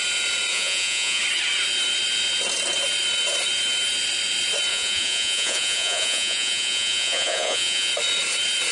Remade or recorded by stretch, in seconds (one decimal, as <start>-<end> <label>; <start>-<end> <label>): 0.0-0.5 recorded; 0.5-1.2 remade; 1.2-4.7 recorded; 4.7-7.9 remade; 7.9-8.7 recorded